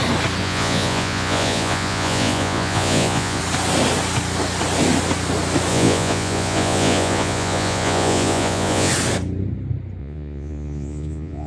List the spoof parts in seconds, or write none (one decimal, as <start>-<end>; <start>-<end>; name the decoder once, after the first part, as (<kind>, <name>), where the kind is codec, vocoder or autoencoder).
0.4-3.4 (vocoder, Vocos); 5.7-8.9; 10.0-11.5